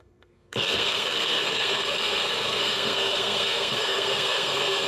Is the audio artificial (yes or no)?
yes